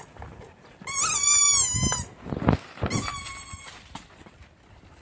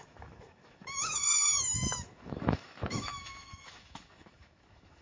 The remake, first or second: second